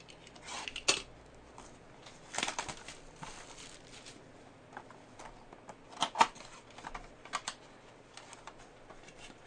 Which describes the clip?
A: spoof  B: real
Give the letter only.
B